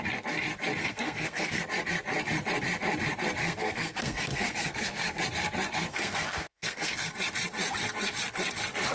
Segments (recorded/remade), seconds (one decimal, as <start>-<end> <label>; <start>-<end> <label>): 0.0-0.8 recorded; 0.8-1.6 remade; 1.6-3.4 recorded; 3.4-5.2 remade; 5.2-5.9 recorded; 5.9-7.1 remade; 7.1-8.9 recorded